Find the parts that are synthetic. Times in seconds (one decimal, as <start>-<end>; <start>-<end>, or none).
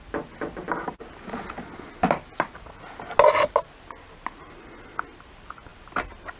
none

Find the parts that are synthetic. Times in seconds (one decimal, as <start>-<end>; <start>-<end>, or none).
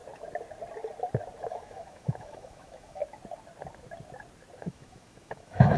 1.4-3.0; 4.6-5.8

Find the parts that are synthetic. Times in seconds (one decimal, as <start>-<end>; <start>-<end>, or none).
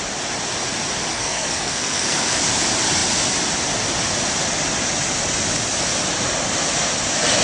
1.1-2.4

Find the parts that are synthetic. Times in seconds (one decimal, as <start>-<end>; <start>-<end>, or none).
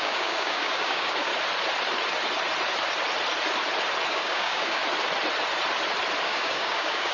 0.0-1.3; 4.1-4.8; 6.2-7.1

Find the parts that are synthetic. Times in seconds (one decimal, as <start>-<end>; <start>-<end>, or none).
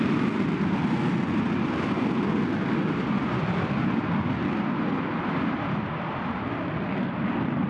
none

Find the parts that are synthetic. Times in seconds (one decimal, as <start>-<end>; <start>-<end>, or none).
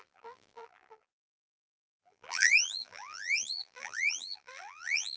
0.0-5.2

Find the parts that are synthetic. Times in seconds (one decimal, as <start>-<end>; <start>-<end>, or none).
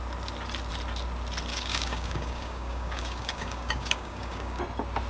1.5-4.6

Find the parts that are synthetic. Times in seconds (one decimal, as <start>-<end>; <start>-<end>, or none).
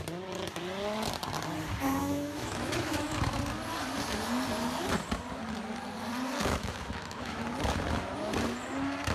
2.0-3.4; 6.4-7.4